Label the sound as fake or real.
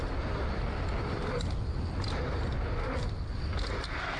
fake